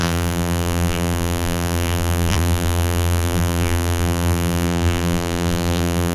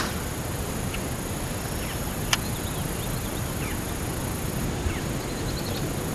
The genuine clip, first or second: second